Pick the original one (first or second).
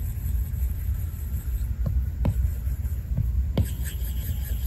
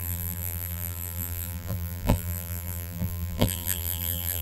first